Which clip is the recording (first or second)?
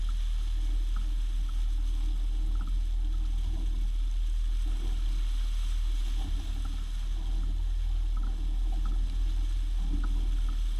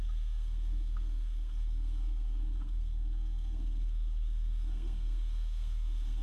first